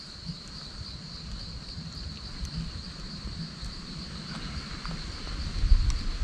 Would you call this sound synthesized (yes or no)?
no